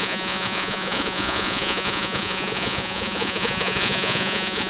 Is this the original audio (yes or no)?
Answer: no